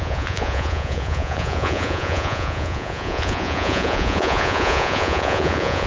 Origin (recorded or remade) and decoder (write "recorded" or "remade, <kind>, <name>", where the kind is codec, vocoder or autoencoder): remade, vocoder, Vocos